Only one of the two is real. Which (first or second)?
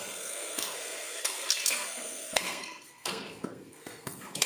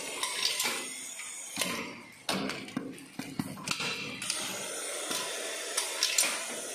second